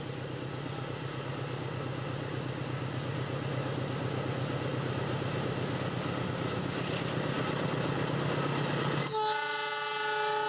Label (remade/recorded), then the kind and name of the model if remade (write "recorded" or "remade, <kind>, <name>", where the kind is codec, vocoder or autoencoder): recorded